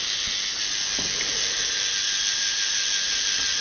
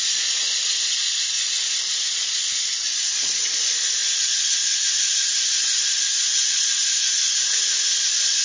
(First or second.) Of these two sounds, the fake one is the second